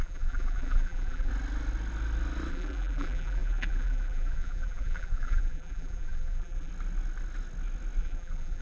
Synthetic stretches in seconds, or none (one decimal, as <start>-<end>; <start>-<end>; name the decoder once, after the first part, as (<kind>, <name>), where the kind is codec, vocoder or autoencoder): 0.0-1.3 (vocoder, BigVGAN v2); 2.5-6.7; 8.0-8.6